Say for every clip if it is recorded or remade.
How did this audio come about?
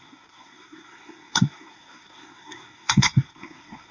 remade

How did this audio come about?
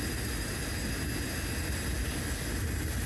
recorded